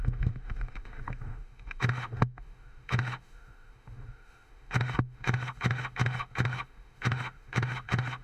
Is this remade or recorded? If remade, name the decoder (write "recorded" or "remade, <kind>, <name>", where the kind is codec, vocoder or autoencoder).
remade, autoencoder, DAC-VAE